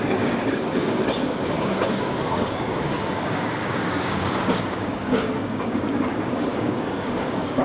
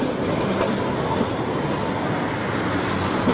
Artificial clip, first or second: first